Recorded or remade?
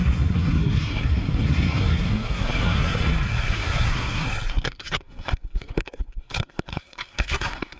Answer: remade